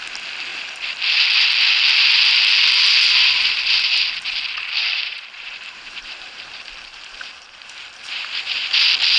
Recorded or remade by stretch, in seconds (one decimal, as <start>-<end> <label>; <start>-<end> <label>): 0.0-4.9 recorded; 4.9-8.7 remade; 8.7-9.2 recorded